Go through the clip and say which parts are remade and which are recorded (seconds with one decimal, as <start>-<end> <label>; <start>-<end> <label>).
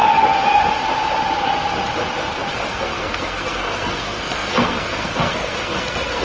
0.0-2.5 recorded; 2.5-6.2 remade